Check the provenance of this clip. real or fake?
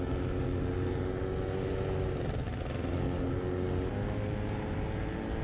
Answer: real